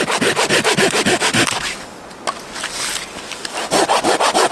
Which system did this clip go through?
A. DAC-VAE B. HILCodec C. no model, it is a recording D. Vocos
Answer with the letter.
C